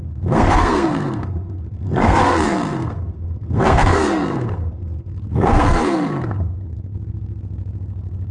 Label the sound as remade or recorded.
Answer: remade